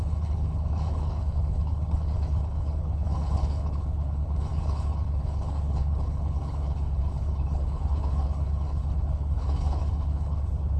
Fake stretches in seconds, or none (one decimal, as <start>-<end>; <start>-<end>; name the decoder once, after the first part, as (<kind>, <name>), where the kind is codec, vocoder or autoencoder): 0.0-10.8 (codec, HILCodec)